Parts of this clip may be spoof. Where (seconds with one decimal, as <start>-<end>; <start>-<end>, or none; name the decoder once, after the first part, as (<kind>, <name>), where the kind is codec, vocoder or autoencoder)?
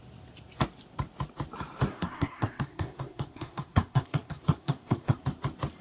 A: 1.9-5.2 (codec, SNAC)